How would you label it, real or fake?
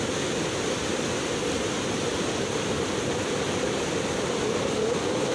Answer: real